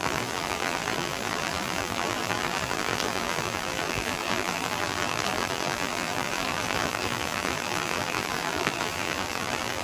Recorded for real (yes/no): no